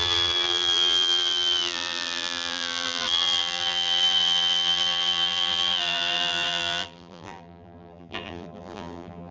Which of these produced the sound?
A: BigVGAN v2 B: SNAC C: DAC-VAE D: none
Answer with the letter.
A